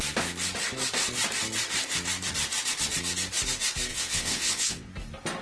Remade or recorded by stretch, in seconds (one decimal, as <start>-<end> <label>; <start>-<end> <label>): 0.0-3.9 recorded; 3.9-4.9 remade; 4.9-5.4 recorded